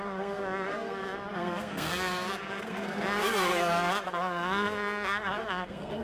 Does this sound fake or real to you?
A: fake